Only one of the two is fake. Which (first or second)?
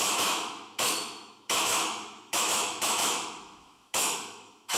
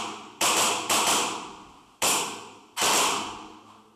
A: first